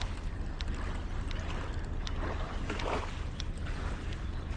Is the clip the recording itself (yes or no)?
yes